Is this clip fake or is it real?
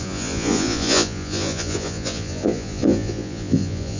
fake